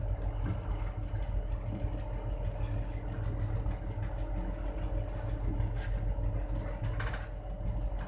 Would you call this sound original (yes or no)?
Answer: yes